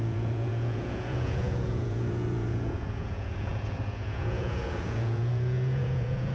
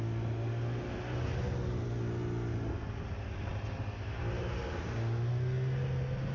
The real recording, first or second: second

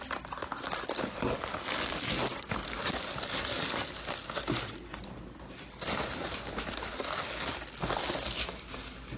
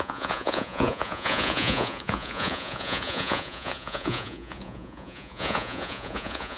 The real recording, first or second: first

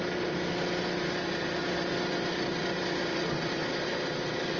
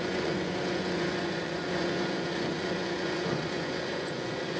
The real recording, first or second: first